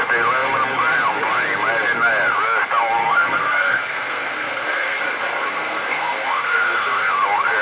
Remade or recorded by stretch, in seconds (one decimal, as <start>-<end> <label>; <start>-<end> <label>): 0.0-3.0 recorded; 3.0-5.0 remade; 5.0-5.4 recorded; 5.4-7.1 remade; 7.1-7.6 recorded